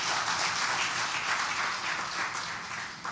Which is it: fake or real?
real